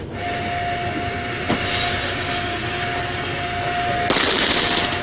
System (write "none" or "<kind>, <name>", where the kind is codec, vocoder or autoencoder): none